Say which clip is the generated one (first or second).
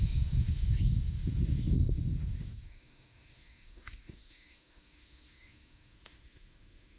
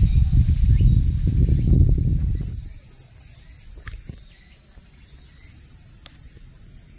first